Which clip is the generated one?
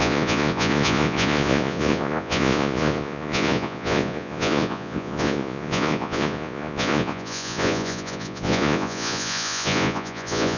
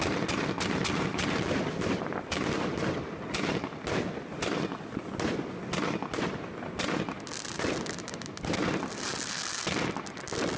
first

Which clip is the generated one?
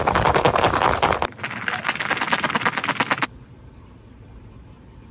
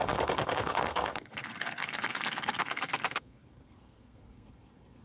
second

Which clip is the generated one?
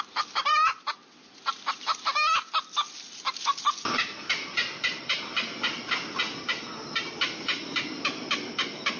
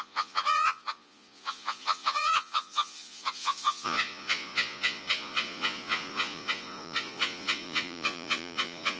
second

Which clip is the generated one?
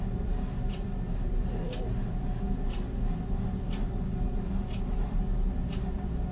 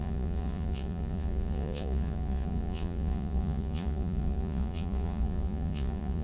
second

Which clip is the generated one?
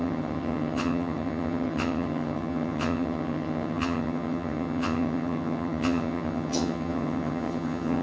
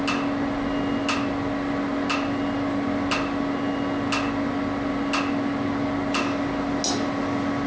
first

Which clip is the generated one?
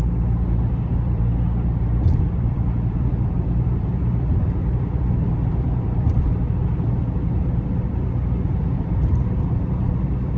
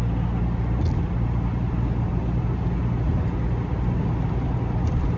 first